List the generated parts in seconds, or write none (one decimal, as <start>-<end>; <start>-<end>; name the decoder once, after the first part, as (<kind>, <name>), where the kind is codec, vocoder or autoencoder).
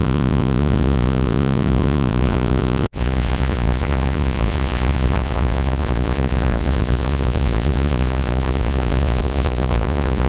0.0-10.3 (vocoder, Vocos)